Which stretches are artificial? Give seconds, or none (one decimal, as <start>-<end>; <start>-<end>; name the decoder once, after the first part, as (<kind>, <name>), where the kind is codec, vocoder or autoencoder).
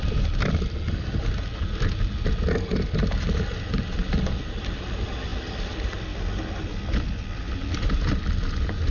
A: none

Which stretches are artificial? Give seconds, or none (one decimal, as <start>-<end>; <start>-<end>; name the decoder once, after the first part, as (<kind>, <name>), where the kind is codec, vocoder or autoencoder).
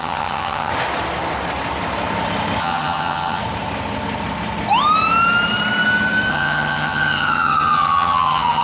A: 0.0-0.7 (vocoder, HiFi-GAN); 2.6-3.4; 6.3-8.6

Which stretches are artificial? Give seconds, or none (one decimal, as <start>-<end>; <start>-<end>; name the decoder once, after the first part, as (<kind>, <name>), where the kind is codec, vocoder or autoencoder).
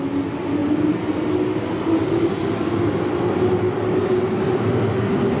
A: none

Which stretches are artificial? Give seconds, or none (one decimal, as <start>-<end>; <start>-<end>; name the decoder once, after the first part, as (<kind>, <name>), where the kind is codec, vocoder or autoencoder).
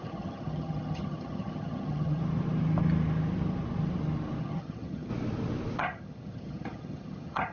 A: 0.0-2.2 (vocoder, HiFi-GAN); 4.4-5.1; 5.8-7.5